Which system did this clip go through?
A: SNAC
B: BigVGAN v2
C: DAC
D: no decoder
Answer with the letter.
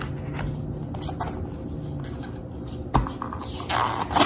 D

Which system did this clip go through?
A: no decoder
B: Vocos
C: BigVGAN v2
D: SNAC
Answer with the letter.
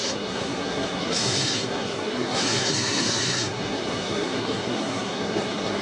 D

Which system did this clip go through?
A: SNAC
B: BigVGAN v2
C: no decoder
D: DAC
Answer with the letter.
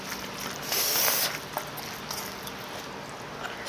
C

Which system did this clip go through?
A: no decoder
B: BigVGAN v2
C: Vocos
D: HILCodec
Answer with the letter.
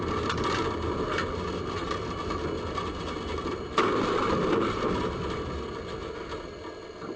A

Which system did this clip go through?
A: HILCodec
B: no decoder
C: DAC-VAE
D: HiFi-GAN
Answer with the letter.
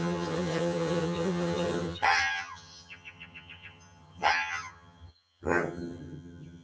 D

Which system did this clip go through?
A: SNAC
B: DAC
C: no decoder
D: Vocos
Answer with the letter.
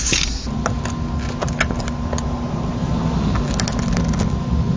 C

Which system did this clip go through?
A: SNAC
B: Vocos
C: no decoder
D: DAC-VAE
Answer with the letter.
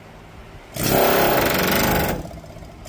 C